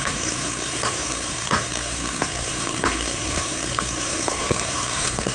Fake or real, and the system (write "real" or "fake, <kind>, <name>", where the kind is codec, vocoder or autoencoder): fake, codec, SNAC